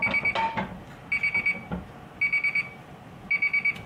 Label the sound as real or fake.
real